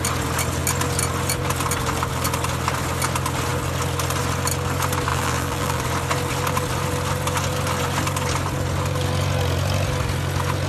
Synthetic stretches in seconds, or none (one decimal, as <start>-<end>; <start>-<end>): 5.1-5.8